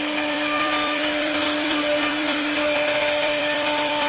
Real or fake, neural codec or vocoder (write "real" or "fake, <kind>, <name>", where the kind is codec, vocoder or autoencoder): fake, vocoder, BigVGAN v2